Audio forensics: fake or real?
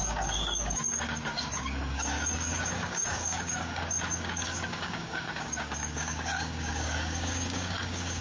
fake